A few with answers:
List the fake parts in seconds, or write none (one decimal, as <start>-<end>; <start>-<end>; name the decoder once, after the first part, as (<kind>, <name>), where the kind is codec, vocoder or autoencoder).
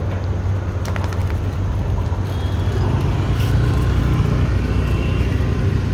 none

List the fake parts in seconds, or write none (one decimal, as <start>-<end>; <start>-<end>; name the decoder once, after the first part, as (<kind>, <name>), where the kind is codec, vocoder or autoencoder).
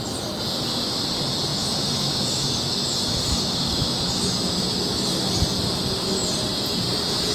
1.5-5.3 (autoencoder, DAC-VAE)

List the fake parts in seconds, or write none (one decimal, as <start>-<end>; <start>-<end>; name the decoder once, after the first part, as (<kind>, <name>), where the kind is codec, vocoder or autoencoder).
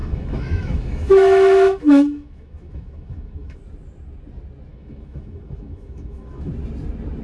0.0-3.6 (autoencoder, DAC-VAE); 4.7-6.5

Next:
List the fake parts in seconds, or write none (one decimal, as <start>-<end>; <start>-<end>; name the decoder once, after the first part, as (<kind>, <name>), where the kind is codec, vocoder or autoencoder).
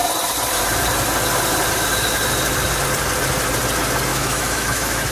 4.1-5.1 (autoencoder, DAC-VAE)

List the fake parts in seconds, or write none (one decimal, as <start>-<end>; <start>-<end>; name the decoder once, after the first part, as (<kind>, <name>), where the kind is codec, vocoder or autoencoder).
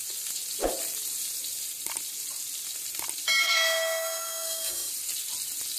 3.4-4.9 (autoencoder, DAC-VAE)